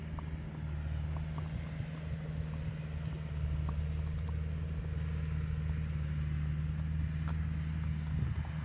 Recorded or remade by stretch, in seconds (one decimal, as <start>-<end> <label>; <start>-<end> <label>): 0.0-8.6 recorded